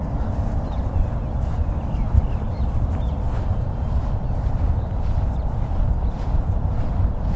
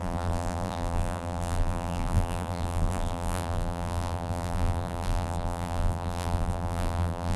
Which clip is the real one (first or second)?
first